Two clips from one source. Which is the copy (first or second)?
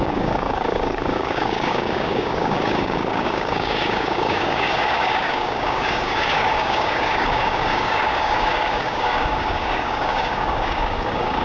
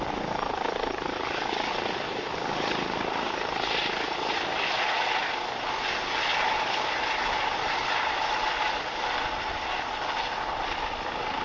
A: first